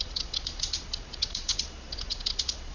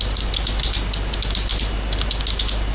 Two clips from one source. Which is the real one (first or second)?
second